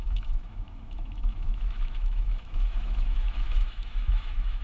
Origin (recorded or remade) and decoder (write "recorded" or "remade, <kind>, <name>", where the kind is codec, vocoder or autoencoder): remade, autoencoder, DAC-VAE